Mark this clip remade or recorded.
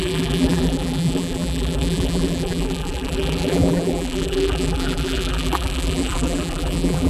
remade